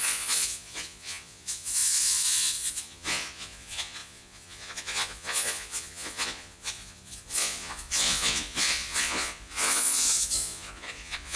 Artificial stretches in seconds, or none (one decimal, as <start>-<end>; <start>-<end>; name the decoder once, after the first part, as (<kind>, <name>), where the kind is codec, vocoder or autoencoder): 0.0-11.4 (vocoder, Vocos)